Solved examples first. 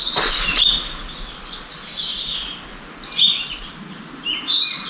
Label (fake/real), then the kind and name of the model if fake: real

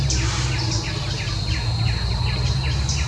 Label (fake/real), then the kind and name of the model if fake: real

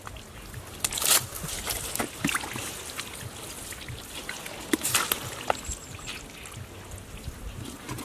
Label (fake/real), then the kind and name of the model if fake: real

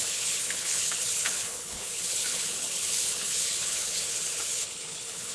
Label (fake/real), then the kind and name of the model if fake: fake, codec, HILCodec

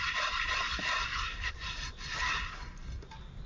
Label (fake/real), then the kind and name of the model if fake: real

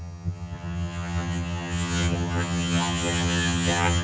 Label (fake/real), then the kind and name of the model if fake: fake, vocoder, HiFi-GAN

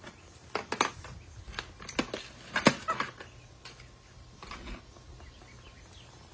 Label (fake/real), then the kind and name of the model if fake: real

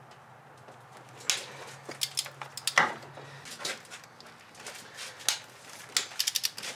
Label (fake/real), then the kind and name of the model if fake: real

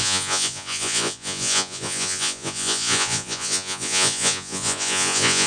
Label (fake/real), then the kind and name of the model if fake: fake, vocoder, Vocos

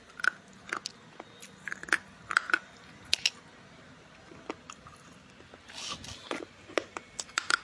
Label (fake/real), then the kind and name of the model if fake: real